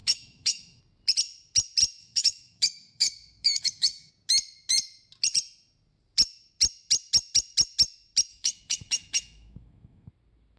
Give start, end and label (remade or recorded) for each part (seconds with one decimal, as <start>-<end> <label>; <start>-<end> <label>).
0.0-0.8 remade; 0.8-2.0 recorded; 2.0-4.1 remade; 4.1-8.3 recorded; 8.3-10.1 remade; 10.1-10.6 recorded

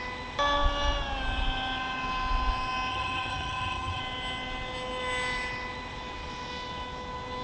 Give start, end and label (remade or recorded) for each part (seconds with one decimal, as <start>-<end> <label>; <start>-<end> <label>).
0.0-2.9 recorded; 2.9-4.0 remade; 4.0-7.4 recorded

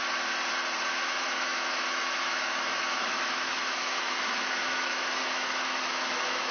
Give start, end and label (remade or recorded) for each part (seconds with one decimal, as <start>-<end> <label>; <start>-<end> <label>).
0.0-1.0 recorded; 1.0-6.5 remade

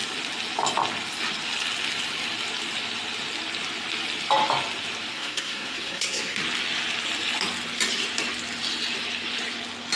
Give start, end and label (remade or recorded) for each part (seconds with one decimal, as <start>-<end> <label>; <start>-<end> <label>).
0.0-5.1 recorded; 5.1-6.4 remade; 6.4-10.0 recorded

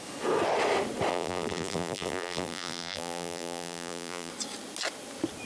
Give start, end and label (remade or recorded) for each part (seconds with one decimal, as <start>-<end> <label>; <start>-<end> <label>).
0.0-1.1 recorded; 1.1-4.3 remade; 4.3-5.5 recorded

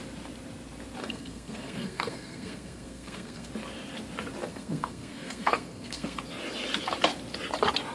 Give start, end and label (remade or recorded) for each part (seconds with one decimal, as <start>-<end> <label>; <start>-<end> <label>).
0.0-1.0 recorded; 1.0-3.5 remade; 3.5-4.5 recorded; 4.5-6.2 remade; 6.2-7.9 recorded

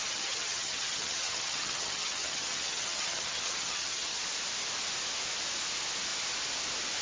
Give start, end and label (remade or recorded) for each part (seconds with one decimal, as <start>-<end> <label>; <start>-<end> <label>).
0.0-4.2 remade; 4.2-7.0 recorded

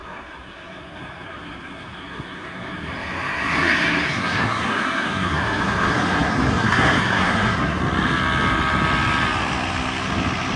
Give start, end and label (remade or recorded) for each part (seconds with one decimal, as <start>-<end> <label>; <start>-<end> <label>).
0.0-7.8 remade; 7.8-10.6 recorded